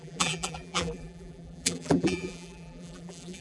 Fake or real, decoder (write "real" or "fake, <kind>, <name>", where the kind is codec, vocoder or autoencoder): fake, vocoder, BigVGAN v2